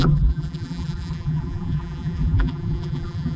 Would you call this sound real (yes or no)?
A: no